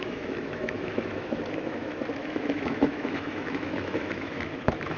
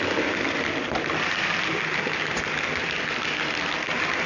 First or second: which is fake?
first